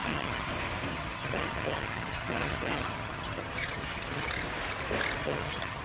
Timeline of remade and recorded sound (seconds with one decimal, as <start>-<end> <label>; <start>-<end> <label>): 0.0-0.5 remade; 0.5-0.9 recorded; 0.9-4.3 remade; 4.3-5.2 recorded; 5.2-5.8 remade